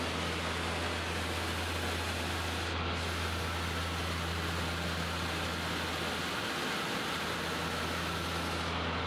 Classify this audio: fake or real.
real